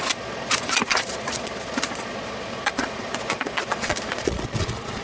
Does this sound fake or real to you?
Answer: fake